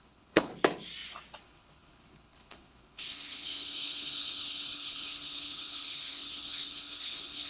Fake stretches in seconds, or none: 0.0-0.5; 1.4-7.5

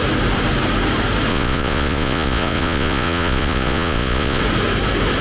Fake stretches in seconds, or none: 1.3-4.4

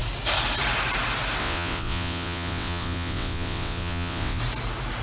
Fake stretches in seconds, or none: 1.4-4.4

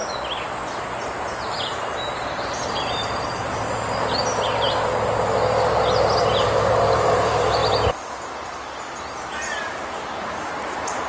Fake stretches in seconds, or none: 1.0-4.3; 6.7-7.6; 9.6-11.1